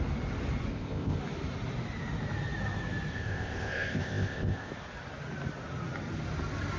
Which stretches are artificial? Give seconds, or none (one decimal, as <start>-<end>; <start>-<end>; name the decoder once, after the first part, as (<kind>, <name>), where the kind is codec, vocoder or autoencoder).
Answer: 0.7-1.2 (codec, ZipCodec); 3.1-4.7